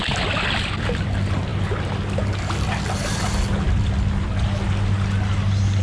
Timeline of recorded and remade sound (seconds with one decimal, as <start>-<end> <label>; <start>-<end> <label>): 0.0-5.8 recorded